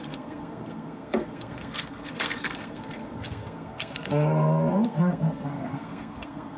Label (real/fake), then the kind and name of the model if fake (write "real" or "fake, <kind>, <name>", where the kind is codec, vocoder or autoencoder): fake, codec, SNAC